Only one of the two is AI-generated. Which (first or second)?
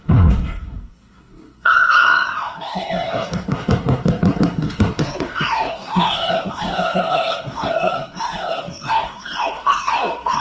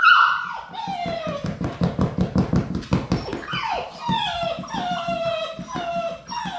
first